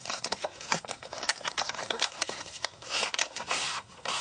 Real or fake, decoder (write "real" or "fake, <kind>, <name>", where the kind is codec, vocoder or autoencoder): fake, codec, SNAC